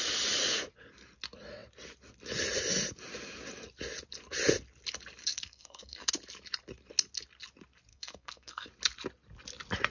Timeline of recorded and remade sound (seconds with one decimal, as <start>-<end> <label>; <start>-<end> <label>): 0.0-5.2 recorded; 5.2-6.1 remade; 6.1-7.9 recorded; 7.9-8.7 remade; 8.7-9.9 recorded